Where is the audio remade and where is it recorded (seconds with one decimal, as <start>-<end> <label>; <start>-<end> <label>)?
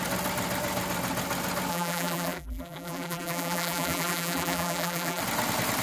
0.0-1.7 recorded; 1.7-5.2 remade; 5.2-5.8 recorded